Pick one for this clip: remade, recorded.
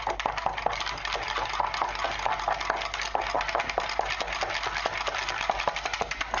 recorded